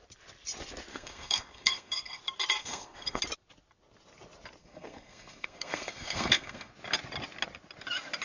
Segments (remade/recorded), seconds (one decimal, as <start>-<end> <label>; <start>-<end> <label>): 0.0-0.9 recorded; 0.9-2.2 remade; 2.2-2.6 recorded; 2.6-3.2 remade; 3.2-4.6 recorded; 4.6-6.7 remade; 6.7-8.2 recorded